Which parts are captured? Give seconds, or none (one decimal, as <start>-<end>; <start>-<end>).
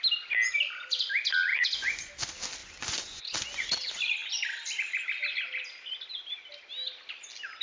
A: 0.0-1.5; 2.1-2.6; 3.7-7.6